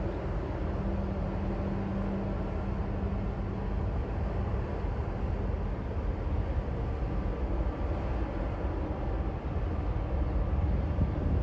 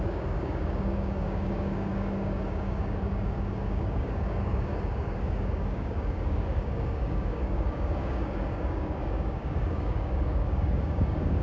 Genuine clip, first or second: first